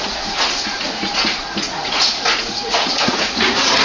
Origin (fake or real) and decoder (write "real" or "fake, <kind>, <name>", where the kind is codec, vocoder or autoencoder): fake, vocoder, Vocos